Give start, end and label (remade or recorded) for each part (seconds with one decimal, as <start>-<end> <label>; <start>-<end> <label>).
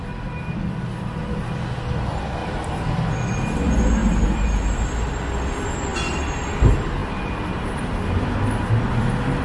0.0-2.4 recorded; 2.4-3.1 remade; 3.1-4.0 recorded; 4.0-5.2 remade; 5.2-7.0 recorded; 7.0-8.4 remade; 8.4-9.4 recorded